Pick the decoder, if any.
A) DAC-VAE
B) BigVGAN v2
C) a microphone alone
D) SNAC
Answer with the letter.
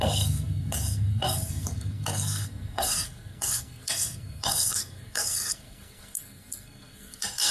D